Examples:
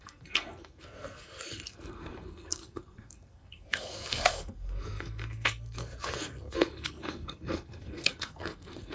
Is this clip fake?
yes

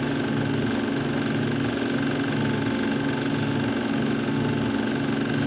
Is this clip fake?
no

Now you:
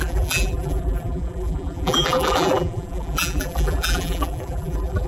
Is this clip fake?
yes